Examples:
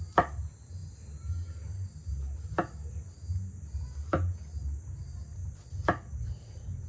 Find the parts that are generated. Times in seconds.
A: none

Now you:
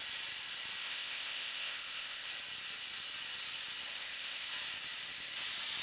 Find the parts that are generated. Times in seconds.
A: 0.8-2.3 (codec, ZipCodec); 3.9-4.5